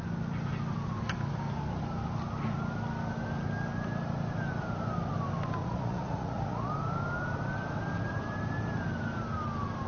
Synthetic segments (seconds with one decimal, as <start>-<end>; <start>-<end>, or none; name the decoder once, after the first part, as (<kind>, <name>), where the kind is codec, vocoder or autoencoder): 5.6-6.7 (vocoder, Vocos)